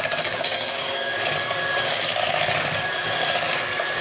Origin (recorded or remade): remade